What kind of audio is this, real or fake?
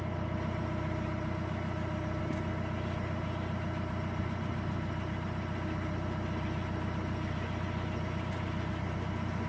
real